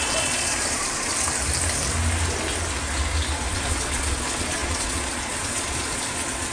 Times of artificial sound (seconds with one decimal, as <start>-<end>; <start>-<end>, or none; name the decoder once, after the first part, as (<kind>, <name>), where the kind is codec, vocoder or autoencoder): 0.0-1.1 (vocoder, Vocos); 3.5-6.5